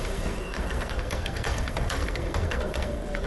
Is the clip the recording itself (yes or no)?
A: no